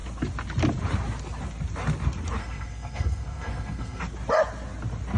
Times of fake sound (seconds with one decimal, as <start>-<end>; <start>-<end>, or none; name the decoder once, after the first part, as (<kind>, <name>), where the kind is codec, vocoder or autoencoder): 2.4-4.0 (codec, SNAC)